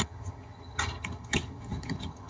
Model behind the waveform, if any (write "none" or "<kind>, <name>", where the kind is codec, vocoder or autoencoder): vocoder, HiFi-GAN